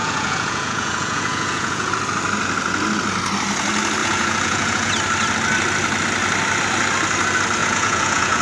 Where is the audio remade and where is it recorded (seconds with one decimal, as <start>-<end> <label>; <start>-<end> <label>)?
0.0-1.9 remade; 1.9-4.0 recorded; 4.0-4.9 remade; 4.9-7.6 recorded; 7.6-8.4 remade